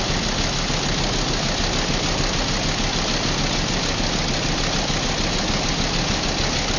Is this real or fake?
real